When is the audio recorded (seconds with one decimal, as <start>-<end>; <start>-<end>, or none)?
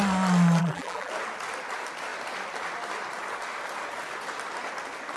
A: 0.0-0.6; 1.1-5.2